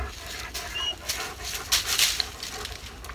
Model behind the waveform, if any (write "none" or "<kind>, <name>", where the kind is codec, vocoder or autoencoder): none